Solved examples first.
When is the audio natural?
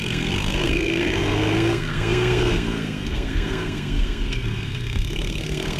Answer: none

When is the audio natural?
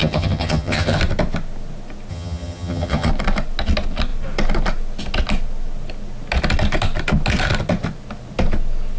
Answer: 1.0-2.1; 3.1-9.0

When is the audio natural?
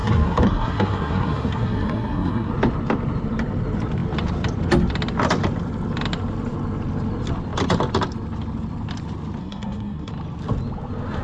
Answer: 2.5-9.4; 10.1-11.2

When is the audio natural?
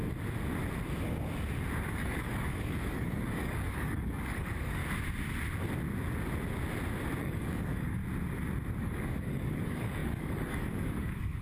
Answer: 0.0-1.9; 4.8-7.2; 8.0-8.8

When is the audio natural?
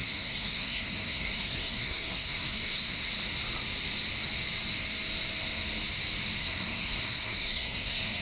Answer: 3.1-6.4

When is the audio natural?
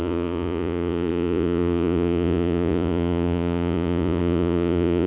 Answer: none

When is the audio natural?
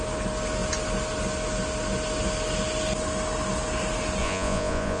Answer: 0.0-4.2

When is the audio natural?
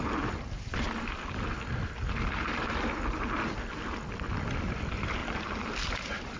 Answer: 0.0-5.2